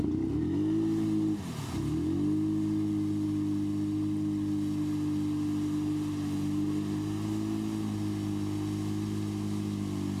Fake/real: real